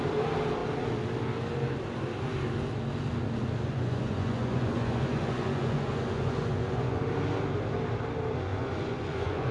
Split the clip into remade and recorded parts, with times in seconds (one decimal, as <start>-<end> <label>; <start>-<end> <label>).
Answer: 0.0-3.7 recorded; 3.7-7.0 remade; 7.0-8.5 recorded; 8.5-9.5 remade